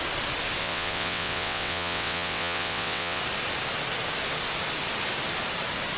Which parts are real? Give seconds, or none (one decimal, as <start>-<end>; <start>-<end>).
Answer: 0.0-0.6; 3.2-6.0